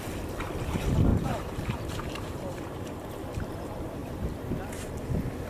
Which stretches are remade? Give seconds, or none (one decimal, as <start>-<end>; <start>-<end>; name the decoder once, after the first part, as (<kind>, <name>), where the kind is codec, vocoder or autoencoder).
1.1-3.1 (vocoder, BigVGAN v2)